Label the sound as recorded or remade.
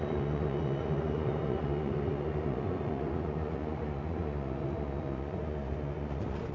remade